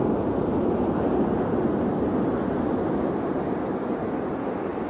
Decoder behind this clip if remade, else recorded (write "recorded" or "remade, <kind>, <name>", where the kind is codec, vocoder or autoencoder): recorded